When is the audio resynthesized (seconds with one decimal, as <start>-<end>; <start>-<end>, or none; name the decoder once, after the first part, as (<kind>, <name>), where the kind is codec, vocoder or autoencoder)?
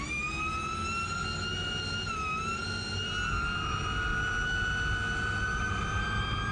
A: none